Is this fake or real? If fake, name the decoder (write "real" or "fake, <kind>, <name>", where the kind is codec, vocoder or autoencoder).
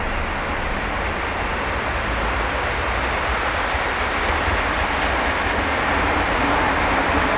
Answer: real